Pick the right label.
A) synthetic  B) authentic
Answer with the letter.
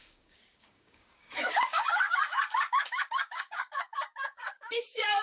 A